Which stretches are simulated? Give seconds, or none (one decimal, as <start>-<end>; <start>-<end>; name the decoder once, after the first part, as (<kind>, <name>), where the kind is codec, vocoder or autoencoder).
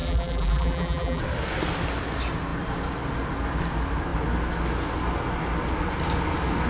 0.0-1.2 (vocoder, BigVGAN v2)